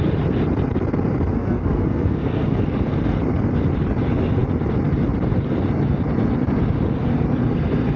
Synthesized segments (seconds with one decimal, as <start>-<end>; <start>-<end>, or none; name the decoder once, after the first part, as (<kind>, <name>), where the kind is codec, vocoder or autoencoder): 1.3-2.6 (codec, SNAC)